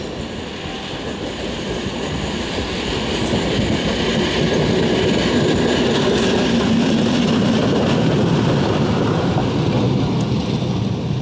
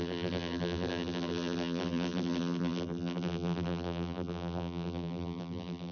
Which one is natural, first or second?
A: first